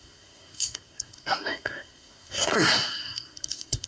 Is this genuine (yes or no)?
no